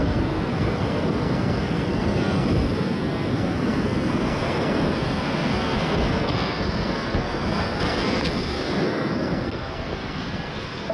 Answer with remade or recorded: remade